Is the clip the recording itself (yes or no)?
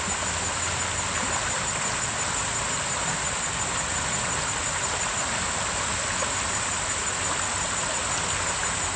yes